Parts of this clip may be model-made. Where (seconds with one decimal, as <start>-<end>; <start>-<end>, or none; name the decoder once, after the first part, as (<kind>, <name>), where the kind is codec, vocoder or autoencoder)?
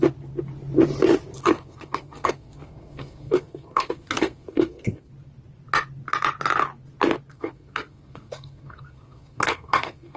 1.4-5.1 (codec, SNAC); 7.3-10.2